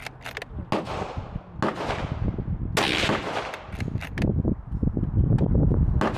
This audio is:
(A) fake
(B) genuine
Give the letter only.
B